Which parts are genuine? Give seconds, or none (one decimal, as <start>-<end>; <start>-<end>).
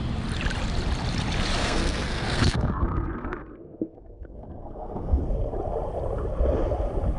0.0-1.6; 5.2-7.2